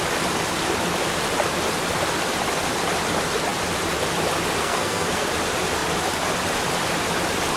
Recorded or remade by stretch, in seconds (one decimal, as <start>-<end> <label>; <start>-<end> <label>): 0.0-4.6 recorded; 4.6-5.3 remade; 5.3-7.6 recorded